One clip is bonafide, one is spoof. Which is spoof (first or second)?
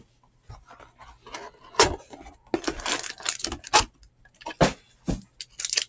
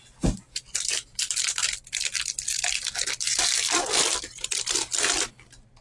second